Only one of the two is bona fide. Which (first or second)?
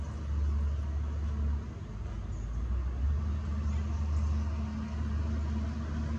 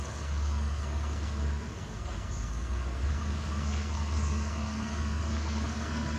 first